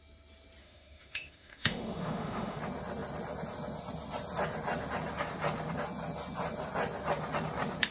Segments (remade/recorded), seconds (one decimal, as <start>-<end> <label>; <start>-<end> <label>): 0.0-0.6 recorded; 0.6-2.6 remade; 2.6-7.9 recorded